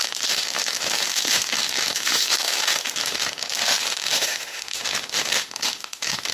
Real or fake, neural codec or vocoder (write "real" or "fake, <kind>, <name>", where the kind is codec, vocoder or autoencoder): fake, autoencoder, DAC-VAE